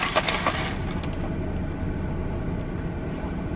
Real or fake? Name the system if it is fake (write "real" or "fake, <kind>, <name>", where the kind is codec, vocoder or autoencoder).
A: real